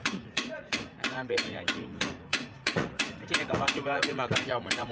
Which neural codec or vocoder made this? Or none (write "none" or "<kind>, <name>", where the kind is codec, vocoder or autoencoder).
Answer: vocoder, Vocos